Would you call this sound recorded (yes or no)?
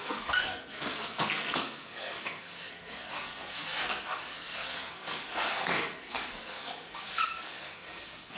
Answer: no